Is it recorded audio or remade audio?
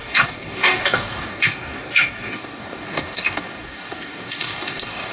remade